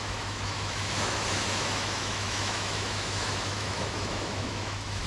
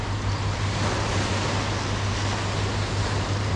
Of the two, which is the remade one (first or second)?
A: first